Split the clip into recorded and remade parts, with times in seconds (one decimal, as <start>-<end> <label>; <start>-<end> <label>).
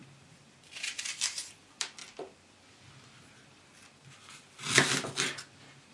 0.0-2.0 remade; 2.0-5.5 recorded; 5.5-5.9 remade